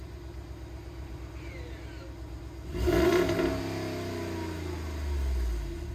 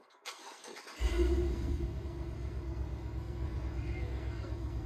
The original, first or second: first